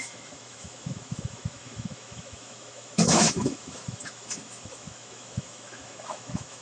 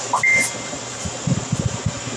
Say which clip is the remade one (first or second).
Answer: first